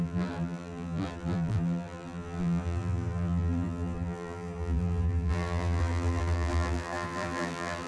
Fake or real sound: fake